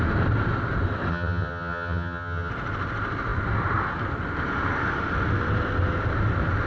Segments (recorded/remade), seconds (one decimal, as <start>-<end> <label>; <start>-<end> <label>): 0.0-1.1 recorded; 1.1-2.5 remade; 2.5-6.7 recorded